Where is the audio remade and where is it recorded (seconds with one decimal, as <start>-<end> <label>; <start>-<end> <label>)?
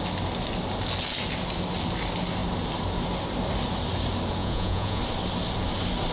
0.0-4.4 recorded; 4.4-5.0 remade; 5.0-6.1 recorded